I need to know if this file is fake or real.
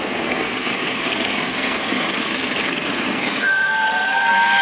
fake